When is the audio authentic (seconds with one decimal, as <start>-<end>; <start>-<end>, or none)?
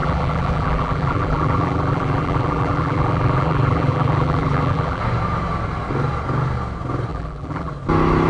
5.0-7.1; 7.7-8.3